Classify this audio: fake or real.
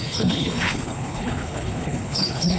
fake